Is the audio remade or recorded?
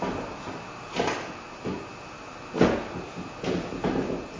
recorded